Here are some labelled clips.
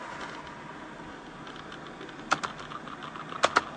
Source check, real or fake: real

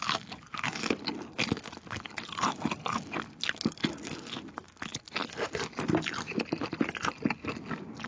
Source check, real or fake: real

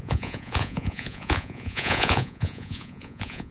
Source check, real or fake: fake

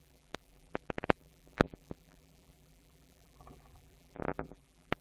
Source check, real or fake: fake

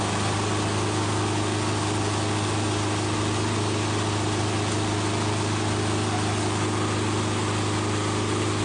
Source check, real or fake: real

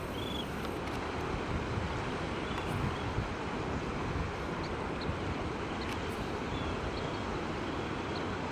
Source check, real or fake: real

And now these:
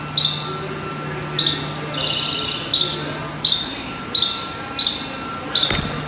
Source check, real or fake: real